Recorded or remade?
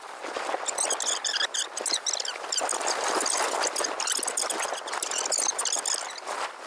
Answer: recorded